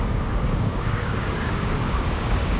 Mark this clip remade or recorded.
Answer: remade